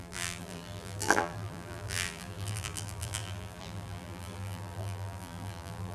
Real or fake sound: fake